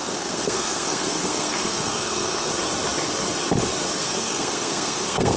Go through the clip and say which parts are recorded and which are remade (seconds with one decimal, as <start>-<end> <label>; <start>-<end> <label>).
0.0-2.5 remade; 2.5-4.0 recorded; 4.0-5.4 remade